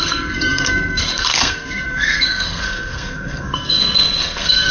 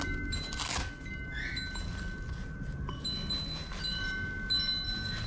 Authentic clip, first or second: second